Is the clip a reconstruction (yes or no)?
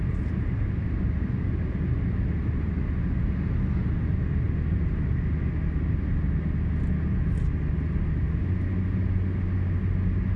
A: no